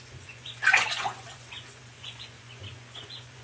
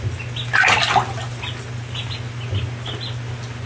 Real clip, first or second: second